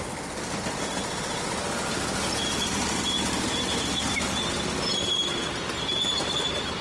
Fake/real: real